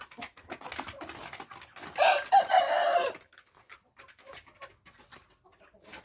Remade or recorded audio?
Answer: recorded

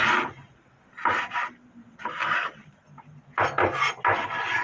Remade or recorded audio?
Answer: recorded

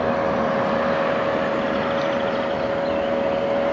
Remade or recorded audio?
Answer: recorded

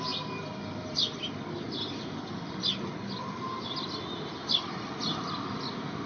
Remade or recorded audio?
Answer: recorded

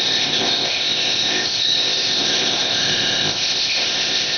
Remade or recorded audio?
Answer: remade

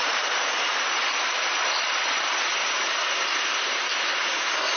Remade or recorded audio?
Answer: recorded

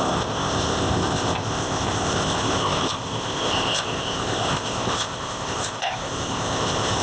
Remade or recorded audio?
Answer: remade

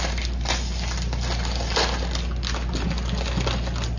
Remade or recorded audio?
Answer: recorded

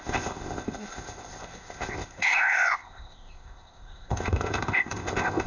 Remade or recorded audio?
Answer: remade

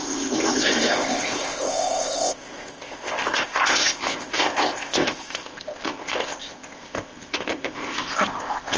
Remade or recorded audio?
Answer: remade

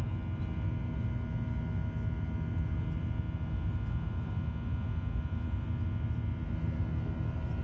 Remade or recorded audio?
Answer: recorded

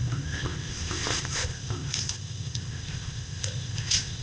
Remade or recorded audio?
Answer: remade